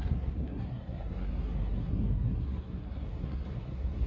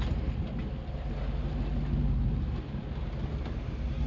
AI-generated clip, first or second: first